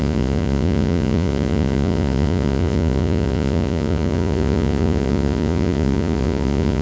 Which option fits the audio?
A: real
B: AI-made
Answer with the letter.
B